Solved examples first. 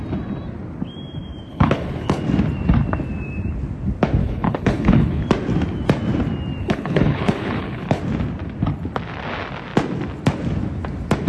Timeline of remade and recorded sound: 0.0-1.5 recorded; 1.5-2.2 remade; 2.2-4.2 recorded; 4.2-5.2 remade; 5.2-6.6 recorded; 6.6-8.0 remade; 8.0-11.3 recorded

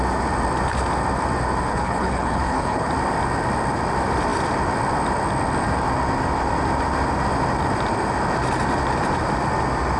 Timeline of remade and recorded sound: 0.0-1.7 recorded; 1.7-2.9 remade; 2.9-10.0 recorded

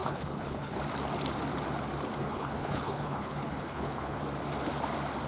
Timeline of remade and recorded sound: 0.0-0.8 remade; 0.8-2.2 recorded; 2.2-4.2 remade; 4.2-5.3 recorded